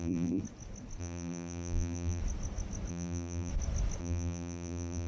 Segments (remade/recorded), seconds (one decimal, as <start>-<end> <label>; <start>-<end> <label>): 0.0-0.4 remade; 0.4-1.0 recorded; 1.0-2.2 remade; 2.2-2.9 recorded; 2.9-3.5 remade; 3.5-4.0 recorded; 4.0-5.1 remade

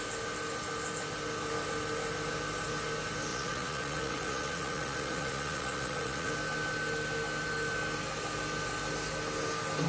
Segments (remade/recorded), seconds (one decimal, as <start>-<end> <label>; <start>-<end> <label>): 0.0-3.3 recorded; 3.3-6.3 remade; 6.3-9.9 recorded

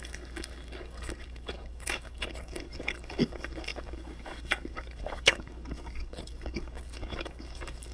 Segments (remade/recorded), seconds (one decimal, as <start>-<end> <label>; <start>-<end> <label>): 0.0-7.9 remade

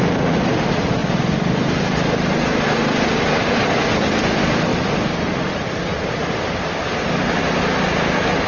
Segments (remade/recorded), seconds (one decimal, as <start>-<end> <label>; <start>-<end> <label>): 0.0-8.5 recorded